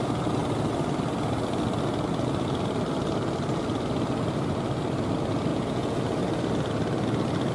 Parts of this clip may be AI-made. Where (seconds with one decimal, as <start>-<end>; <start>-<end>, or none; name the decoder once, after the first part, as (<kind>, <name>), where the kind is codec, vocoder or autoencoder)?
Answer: 5.5-6.0 (vocoder, Vocos)